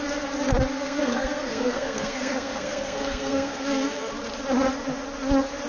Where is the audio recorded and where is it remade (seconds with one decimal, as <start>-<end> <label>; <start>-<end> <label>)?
0.0-0.7 recorded; 0.7-4.1 remade; 4.1-5.7 recorded